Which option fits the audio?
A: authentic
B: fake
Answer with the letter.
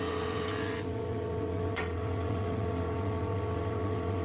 B